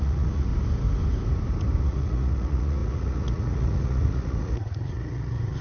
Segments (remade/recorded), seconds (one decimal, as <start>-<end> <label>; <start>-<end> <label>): 0.0-0.5 remade; 0.5-1.8 recorded; 1.8-5.6 remade